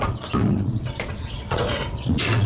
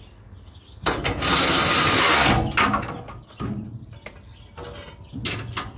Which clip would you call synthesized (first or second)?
first